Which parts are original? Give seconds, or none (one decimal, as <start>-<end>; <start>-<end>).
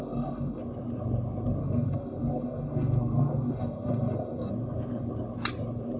0.6-1.6; 4.5-6.0